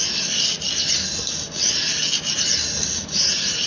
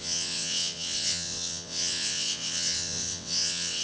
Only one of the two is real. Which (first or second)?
first